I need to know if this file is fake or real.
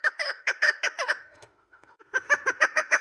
fake